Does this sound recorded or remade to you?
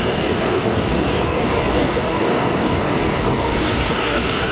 remade